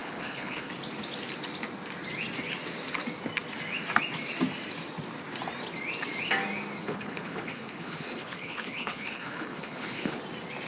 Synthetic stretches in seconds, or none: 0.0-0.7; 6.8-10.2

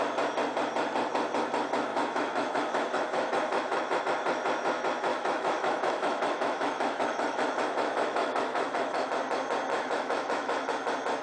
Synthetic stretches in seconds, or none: 1.9-4.0; 5.1-9.1; 9.7-10.7

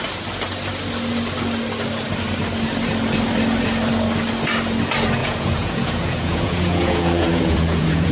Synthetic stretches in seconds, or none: 5.2-8.1

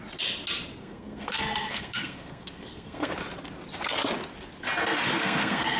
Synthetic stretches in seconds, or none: 0.8-3.1; 5.1-5.8

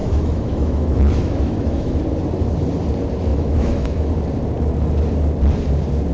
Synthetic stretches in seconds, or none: 0.0-2.0; 3.3-4.1

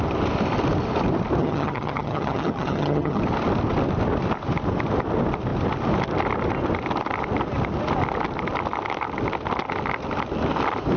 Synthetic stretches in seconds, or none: 1.4-3.2

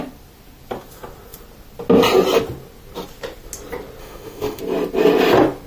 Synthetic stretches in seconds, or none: 4.0-4.6

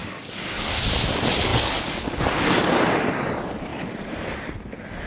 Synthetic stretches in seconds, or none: 0.0-0.8; 1.5-2.2